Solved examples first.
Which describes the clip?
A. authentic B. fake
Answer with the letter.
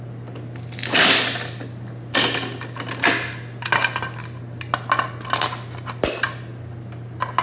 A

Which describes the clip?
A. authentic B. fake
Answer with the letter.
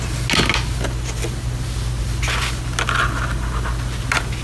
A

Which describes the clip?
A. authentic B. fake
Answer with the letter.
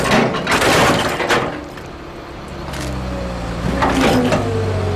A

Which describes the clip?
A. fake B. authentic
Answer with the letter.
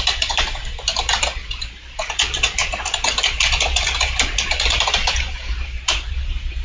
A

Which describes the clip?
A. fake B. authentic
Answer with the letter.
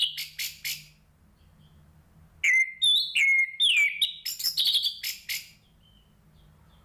B